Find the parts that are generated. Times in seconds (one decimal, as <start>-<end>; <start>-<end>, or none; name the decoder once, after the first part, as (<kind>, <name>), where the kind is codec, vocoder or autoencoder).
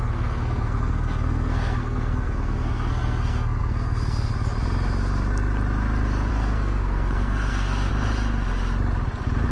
0.0-4.3 (codec, SNAC); 6.3-7.9